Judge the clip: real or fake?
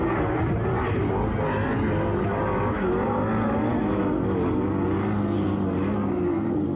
real